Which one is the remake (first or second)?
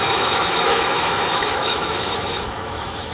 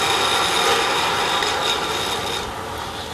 first